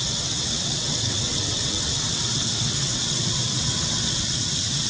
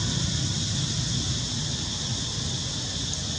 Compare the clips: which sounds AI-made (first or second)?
first